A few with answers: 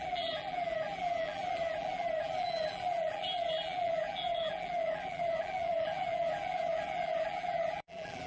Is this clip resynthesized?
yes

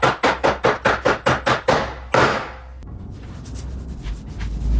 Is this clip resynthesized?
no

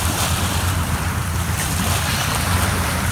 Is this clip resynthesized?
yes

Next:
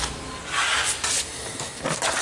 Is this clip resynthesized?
no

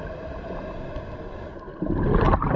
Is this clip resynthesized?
yes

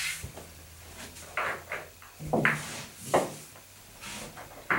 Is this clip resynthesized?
no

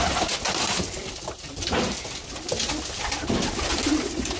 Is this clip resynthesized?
no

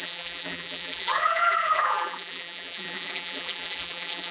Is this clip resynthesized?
yes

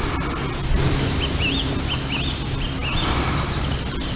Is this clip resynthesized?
no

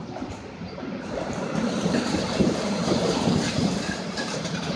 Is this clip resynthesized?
yes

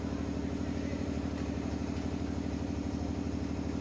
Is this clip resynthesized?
no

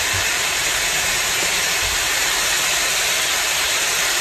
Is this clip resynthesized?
yes